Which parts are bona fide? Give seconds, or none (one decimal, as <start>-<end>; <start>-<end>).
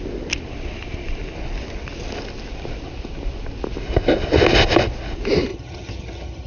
0.0-5.5